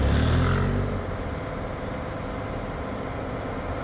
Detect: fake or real real